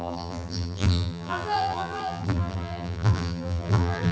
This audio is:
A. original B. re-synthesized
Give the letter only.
B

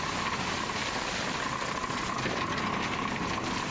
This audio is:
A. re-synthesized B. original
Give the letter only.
B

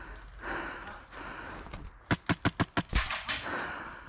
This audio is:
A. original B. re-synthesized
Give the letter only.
A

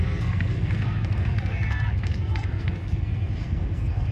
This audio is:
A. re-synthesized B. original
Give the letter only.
A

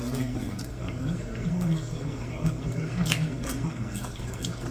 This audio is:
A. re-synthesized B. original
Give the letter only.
A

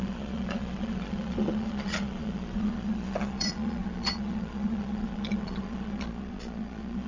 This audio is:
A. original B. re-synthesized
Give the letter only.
B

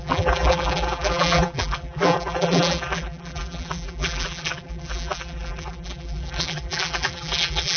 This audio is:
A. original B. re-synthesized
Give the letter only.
B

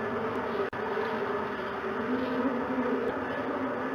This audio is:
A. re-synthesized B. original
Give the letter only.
B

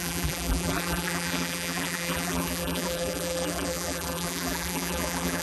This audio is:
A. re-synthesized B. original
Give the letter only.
A